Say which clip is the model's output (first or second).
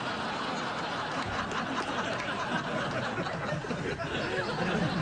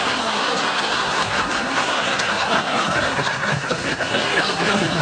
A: second